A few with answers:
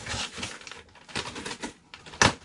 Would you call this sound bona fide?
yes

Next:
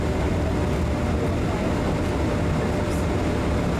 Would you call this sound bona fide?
yes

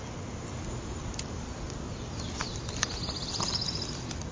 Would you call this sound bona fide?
yes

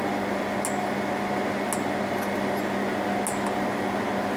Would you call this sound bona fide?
yes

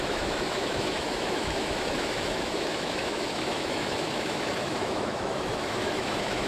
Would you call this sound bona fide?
no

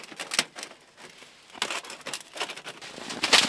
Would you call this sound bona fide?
yes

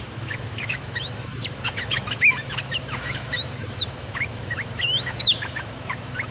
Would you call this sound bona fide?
no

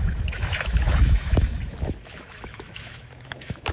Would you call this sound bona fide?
no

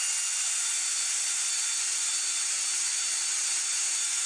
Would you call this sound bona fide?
yes